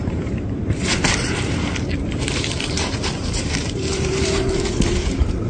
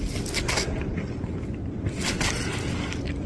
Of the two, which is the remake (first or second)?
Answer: first